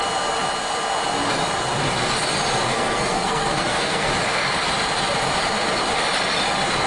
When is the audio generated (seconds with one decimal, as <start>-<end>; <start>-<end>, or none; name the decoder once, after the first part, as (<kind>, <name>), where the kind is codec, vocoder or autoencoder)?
2.7-4.1 (codec, SNAC)